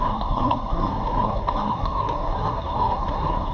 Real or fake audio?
fake